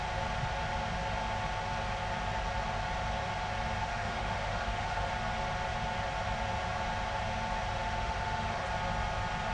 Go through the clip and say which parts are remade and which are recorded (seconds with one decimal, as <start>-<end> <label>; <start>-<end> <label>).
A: 0.0-3.8 recorded; 3.8-5.1 remade; 5.1-7.8 recorded; 7.8-8.6 remade; 8.6-9.5 recorded